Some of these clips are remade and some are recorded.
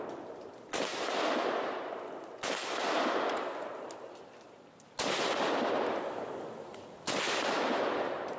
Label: recorded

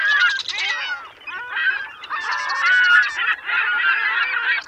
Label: recorded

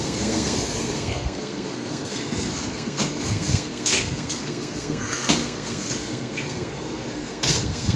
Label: remade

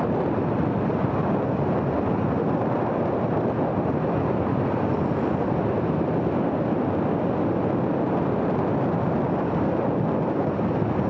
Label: recorded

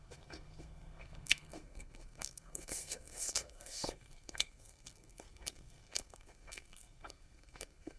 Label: remade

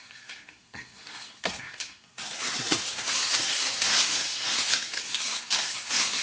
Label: remade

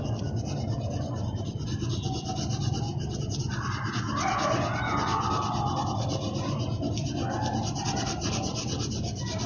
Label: recorded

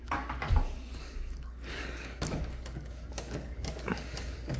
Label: remade